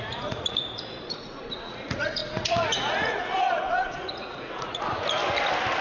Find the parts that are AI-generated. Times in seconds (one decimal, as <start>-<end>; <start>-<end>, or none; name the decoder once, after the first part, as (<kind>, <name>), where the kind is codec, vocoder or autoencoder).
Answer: 0.0-5.2 (vocoder, Vocos)

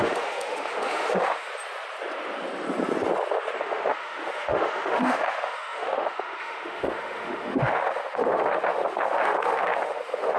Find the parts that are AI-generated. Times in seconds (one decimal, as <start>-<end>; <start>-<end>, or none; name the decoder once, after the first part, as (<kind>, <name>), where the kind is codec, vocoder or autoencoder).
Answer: 0.0-1.5 (autoencoder, DAC-VAE); 3.6-10.4

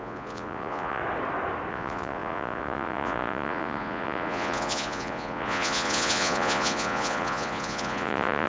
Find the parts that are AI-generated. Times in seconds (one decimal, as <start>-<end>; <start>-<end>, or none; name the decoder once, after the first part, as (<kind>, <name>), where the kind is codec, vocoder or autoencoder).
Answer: 0.0-1.0 (vocoder, Vocos); 1.7-8.5

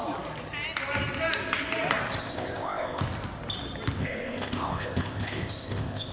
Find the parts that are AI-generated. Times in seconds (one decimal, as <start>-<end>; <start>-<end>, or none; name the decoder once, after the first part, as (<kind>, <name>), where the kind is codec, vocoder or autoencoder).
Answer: 2.2-3.0 (codec, ZipCodec); 4.0-6.1